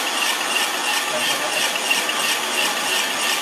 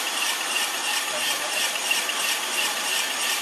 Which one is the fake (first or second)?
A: second